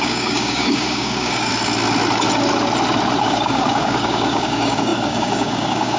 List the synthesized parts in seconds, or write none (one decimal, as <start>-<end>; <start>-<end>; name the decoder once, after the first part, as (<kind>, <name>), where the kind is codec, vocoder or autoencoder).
0.0-1.5 (codec, DAC); 3.2-6.0